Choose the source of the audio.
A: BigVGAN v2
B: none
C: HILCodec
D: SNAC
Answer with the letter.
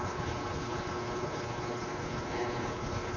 C